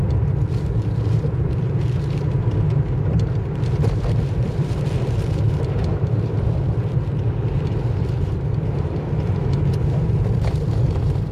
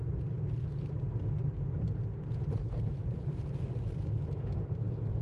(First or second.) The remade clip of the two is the first